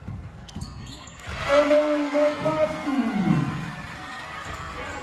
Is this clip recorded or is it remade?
remade